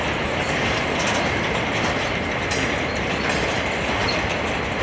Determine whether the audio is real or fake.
real